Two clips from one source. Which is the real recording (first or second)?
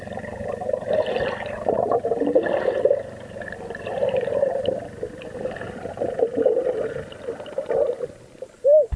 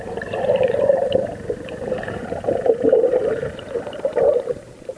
first